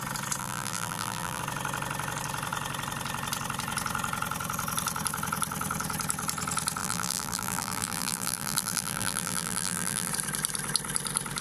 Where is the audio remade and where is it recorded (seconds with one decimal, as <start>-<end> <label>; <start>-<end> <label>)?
0.0-0.4 recorded; 0.4-1.4 remade; 1.4-6.8 recorded; 6.8-10.1 remade; 10.1-11.4 recorded